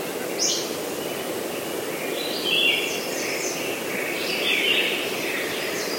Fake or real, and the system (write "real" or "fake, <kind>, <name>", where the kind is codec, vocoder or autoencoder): real